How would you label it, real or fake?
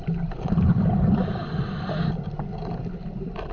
real